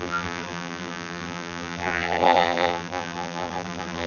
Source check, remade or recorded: remade